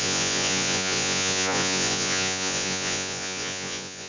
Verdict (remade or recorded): remade